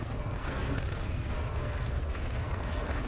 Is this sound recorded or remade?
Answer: remade